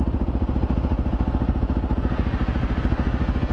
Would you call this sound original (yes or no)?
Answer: yes